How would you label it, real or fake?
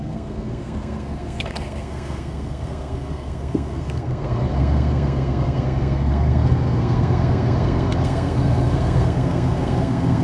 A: fake